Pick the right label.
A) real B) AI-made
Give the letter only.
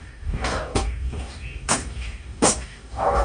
B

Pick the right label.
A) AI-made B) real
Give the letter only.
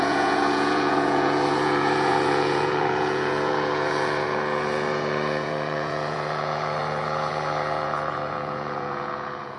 A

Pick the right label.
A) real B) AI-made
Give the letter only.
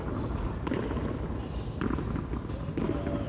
A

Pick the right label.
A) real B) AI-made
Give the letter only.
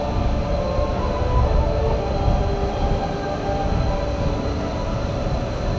A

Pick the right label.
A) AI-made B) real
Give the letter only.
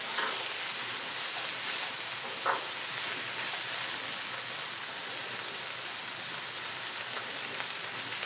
B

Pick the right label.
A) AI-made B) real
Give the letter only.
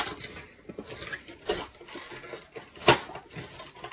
B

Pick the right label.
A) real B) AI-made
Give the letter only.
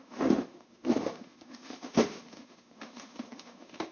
B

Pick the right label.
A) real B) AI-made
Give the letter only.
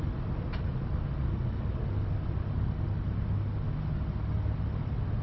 A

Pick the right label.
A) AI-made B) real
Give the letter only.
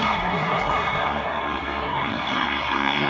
A